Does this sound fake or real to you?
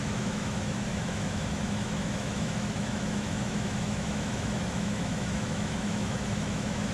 fake